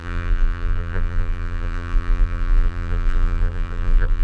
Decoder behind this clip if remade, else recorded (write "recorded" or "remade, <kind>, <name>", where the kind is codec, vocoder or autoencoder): remade, vocoder, BigVGAN v2